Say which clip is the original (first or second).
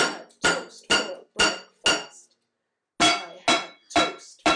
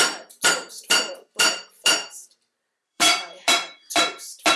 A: first